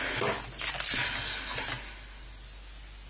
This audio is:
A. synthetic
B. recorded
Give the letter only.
B